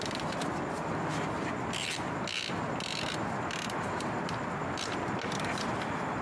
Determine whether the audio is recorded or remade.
recorded